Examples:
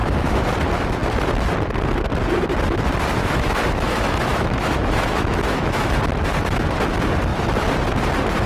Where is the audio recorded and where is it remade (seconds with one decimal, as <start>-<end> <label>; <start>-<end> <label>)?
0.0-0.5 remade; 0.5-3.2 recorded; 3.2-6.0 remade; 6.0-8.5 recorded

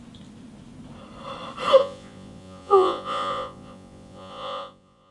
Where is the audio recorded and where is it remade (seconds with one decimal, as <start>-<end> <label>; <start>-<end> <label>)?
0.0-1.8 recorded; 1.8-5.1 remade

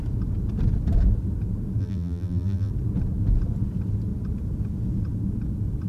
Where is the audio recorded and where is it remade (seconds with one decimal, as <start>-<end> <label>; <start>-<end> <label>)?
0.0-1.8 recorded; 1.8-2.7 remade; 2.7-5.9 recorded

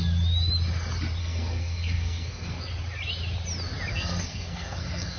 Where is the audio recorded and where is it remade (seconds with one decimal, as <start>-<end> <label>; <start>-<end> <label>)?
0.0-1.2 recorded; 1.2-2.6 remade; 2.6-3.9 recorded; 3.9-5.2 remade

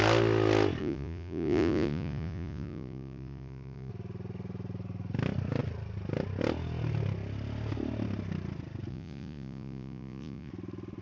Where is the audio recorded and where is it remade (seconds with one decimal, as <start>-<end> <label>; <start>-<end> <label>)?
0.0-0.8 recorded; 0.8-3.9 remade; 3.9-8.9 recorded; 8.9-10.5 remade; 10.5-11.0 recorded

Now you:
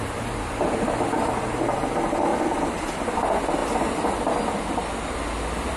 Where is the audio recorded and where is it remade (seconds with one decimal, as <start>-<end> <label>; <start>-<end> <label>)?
0.0-2.3 recorded; 2.3-2.9 remade; 2.9-3.6 recorded; 3.6-4.1 remade; 4.1-5.8 recorded

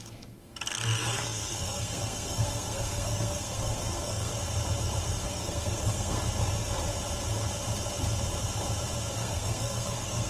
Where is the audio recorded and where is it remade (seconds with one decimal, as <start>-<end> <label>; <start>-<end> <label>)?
0.0-4.3 remade; 4.3-5.0 recorded; 5.0-6.2 remade; 6.2-9.1 recorded; 9.1-10.3 remade

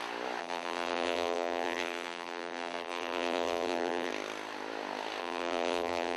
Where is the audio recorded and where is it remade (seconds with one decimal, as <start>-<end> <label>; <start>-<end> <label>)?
0.0-0.4 recorded; 0.4-4.1 remade; 4.1-5.2 recorded; 5.2-6.2 remade